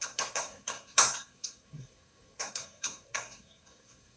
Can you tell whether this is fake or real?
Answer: fake